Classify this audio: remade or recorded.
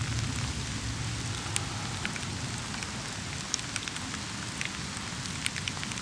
recorded